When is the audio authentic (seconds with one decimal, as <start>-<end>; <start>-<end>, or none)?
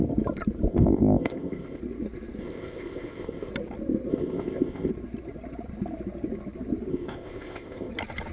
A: 0.0-0.7; 1.8-2.4; 3.5-4.1; 4.9-6.9; 7.9-8.3